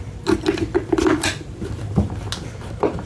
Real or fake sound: real